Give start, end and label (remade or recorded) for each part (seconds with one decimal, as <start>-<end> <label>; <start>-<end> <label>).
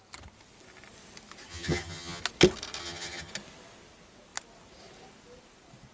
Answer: 0.0-1.5 recorded; 1.5-2.2 remade; 2.2-2.8 recorded; 2.8-3.3 remade; 3.3-5.9 recorded